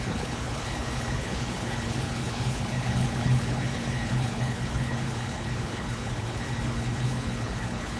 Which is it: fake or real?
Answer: fake